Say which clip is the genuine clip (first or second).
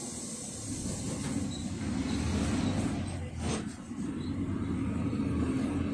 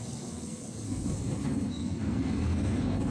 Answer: first